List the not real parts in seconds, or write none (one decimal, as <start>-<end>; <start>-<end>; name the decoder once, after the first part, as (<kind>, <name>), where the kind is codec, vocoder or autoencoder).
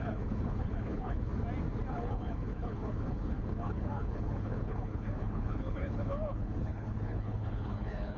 0.0-1.3 (codec, HILCodec); 1.9-8.2